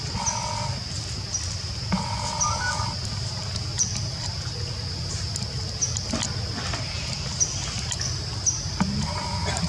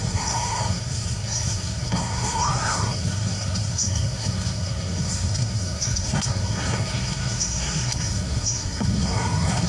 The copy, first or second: second